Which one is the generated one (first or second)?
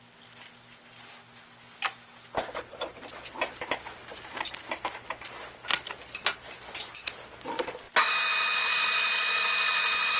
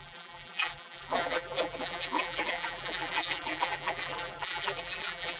second